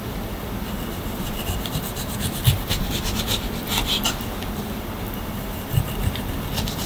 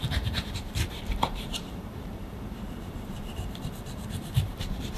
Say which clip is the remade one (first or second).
second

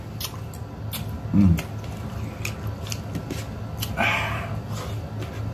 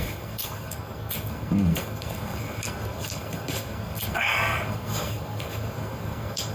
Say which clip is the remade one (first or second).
second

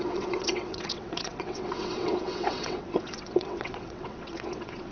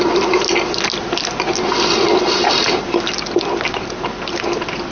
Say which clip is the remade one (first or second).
first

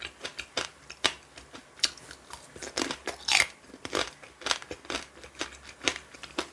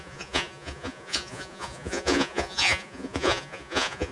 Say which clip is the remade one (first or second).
second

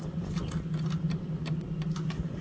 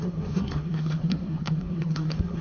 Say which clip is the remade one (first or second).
second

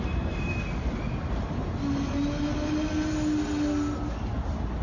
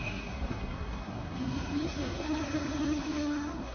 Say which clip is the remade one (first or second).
second